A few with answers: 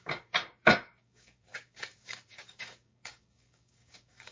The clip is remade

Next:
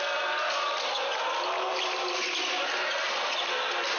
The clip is recorded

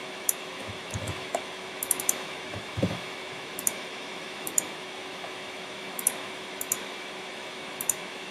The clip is remade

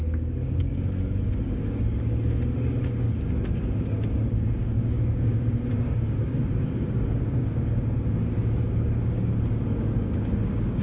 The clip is remade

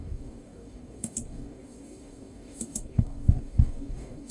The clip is remade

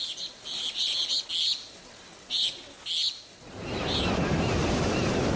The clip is recorded